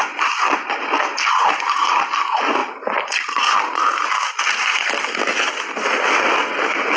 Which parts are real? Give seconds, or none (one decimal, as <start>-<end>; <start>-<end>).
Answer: 0.0-7.0